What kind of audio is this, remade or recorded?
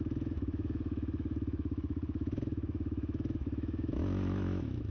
remade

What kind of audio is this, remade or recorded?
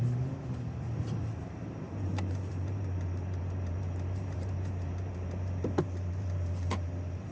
remade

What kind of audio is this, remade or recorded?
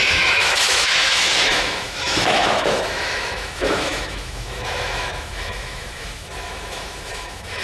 remade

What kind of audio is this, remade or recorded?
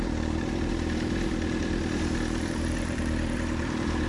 remade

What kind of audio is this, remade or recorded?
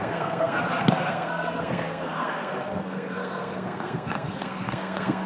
remade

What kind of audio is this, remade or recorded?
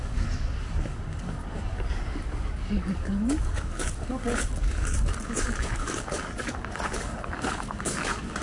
remade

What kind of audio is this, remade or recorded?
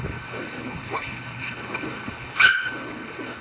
remade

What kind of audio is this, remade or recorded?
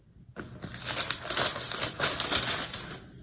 recorded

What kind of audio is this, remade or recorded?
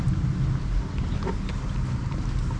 recorded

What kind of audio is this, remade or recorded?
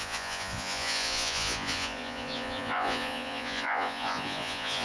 remade